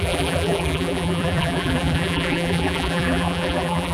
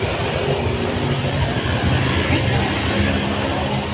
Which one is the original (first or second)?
second